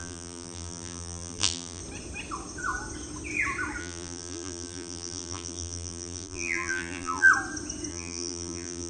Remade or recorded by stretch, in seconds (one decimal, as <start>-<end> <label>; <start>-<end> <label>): 0.0-1.8 remade; 1.8-3.8 recorded; 3.8-7.3 remade; 7.3-7.9 recorded; 7.9-8.9 remade